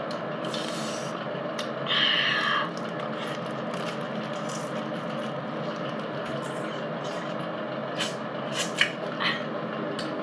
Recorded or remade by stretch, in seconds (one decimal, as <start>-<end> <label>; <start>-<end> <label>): 0.0-10.2 recorded